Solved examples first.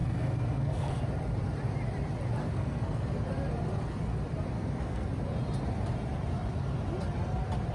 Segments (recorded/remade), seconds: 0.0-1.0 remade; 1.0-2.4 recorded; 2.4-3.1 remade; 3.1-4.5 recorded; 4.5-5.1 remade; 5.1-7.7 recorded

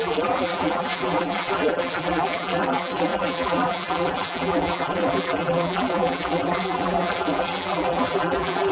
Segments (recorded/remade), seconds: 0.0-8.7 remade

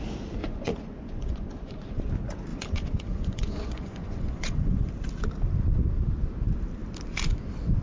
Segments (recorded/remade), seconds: 0.0-0.4 recorded; 0.4-2.1 remade; 2.1-2.5 recorded; 2.5-4.9 remade; 4.9-7.8 recorded